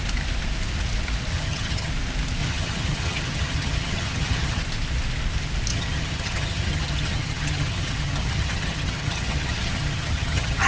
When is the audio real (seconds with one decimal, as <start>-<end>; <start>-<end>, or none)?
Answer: 0.0-1.3; 1.9-2.4; 4.6-5.7